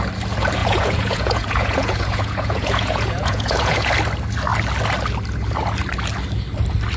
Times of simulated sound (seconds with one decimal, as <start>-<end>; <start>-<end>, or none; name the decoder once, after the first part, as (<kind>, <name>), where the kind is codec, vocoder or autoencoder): 0.6-3.9 (vocoder, Vocos)